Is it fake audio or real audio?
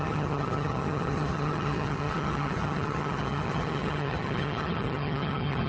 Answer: fake